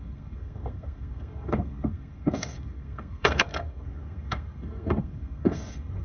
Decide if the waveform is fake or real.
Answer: fake